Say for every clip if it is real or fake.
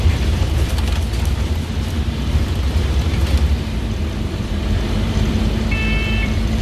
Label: fake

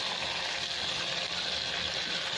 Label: real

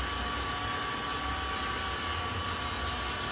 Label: real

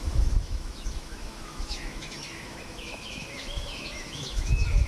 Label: fake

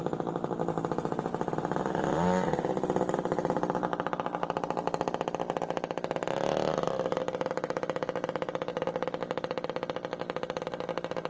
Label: real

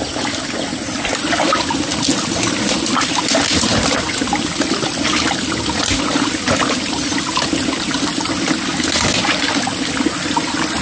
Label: real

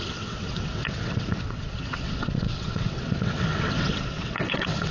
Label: fake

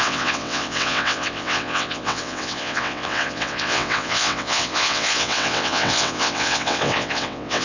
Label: fake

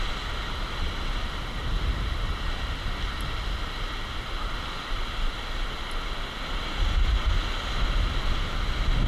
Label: real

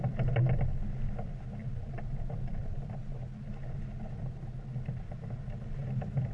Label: real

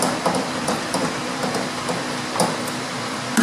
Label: fake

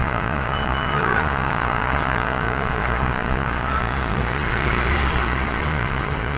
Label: fake